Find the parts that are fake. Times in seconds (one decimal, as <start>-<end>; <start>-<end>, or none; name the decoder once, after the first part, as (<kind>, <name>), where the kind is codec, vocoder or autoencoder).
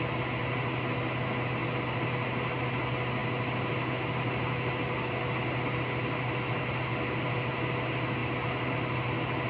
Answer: none